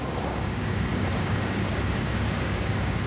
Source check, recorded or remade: remade